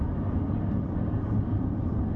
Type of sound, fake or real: real